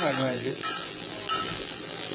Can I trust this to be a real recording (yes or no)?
no